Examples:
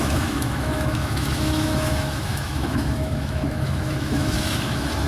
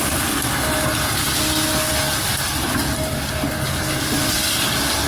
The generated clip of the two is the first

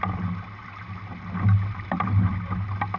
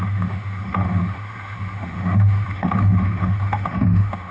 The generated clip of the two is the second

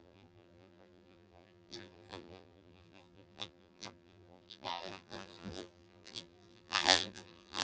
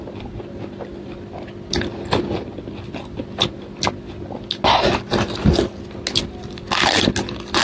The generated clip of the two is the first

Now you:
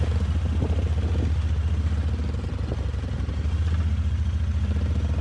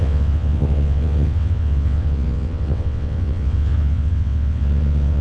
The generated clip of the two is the second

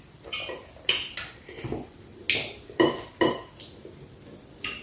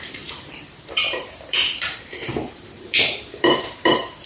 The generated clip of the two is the second